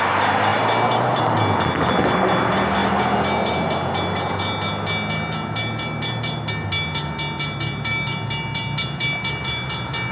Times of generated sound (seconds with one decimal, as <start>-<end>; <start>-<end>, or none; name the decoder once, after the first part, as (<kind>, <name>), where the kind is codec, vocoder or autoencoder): none